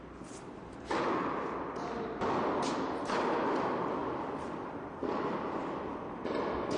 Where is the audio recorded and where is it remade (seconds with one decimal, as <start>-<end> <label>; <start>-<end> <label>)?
0.0-6.8 recorded